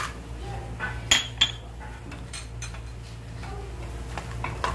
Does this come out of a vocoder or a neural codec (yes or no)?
no